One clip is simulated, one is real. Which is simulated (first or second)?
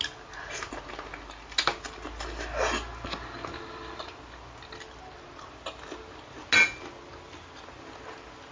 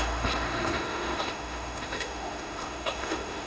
second